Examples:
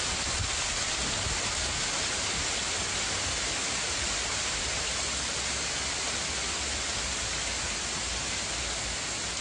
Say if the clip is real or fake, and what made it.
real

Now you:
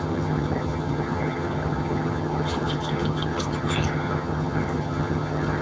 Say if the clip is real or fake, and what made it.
fake, vocoder, HiFi-GAN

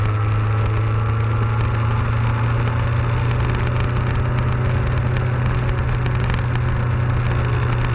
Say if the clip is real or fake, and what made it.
real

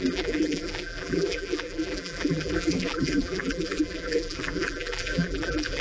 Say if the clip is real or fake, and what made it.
fake, vocoder, BigVGAN v2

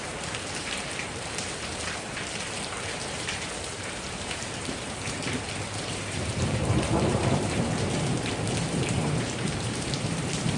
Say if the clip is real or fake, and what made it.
fake, vocoder, BigVGAN v2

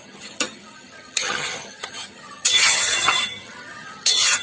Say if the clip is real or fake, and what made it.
fake, vocoder, HiFi-GAN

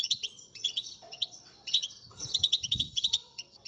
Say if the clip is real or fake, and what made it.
fake, vocoder, WaveNeXt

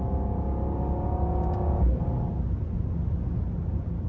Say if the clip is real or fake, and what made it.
real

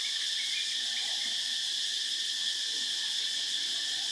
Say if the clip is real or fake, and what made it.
real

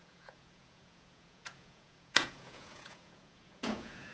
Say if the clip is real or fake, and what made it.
fake, vocoder, Vocos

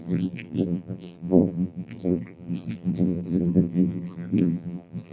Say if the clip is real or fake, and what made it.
fake, vocoder, BigVGAN v2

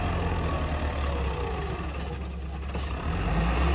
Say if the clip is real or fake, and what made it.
real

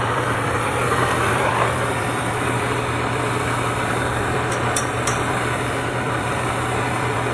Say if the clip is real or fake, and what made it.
fake, vocoder, BigVGAN v2